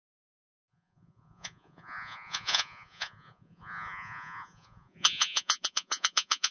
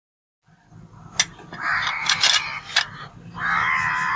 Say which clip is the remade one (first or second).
first